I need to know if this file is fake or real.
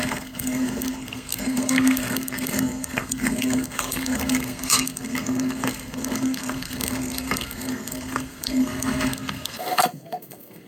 fake